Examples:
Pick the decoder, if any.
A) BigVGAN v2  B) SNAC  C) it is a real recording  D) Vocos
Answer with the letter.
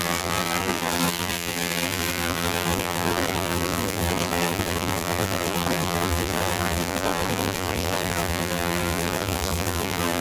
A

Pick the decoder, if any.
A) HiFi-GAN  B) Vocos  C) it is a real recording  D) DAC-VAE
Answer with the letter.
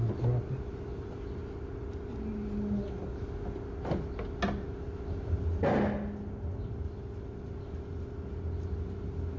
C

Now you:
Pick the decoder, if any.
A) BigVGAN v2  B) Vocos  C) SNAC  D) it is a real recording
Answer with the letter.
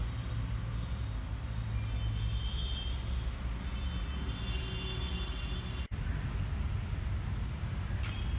D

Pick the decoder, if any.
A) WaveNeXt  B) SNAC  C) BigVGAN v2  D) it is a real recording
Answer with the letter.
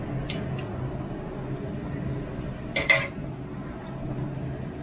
D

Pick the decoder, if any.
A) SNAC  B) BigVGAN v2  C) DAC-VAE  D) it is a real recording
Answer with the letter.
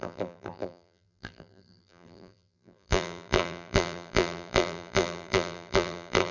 B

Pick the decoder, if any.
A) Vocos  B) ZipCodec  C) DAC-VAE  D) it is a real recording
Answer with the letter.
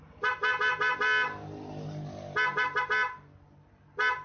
D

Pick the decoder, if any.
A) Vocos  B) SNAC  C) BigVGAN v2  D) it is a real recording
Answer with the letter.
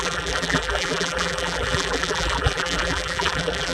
C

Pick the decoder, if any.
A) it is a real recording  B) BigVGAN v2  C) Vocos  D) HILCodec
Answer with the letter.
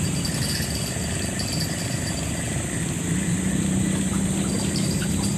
A